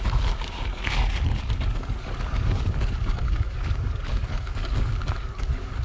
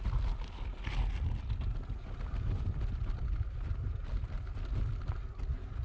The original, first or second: second